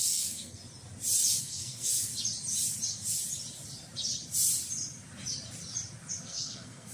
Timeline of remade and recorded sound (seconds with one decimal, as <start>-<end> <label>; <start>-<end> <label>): 0.0-0.6 remade; 0.6-1.4 recorded; 1.4-2.1 remade; 2.1-6.2 recorded; 6.2-6.9 remade